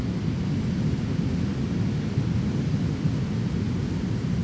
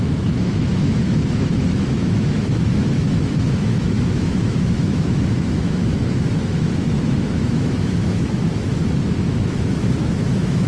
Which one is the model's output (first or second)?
second